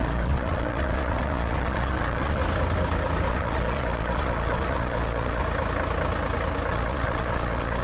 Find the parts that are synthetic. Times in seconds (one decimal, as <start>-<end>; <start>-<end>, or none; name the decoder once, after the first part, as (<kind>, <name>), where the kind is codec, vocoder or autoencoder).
0.0-2.4 (vocoder, Vocos); 3.3-5.4; 6.7-7.8